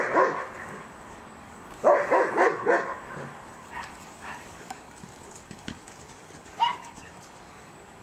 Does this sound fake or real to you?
fake